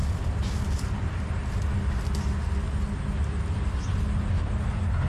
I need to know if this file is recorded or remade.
recorded